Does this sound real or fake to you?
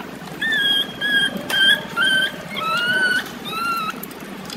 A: fake